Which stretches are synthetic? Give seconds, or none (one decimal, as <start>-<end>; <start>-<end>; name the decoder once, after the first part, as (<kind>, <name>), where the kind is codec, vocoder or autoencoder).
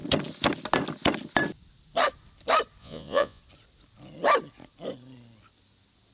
2.8-3.4 (vocoder, Vocos)